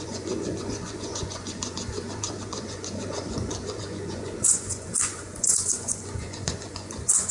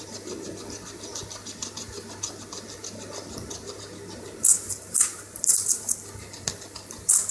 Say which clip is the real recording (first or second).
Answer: second